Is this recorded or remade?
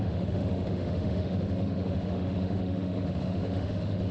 remade